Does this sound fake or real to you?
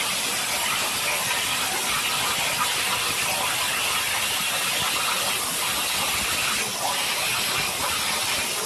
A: real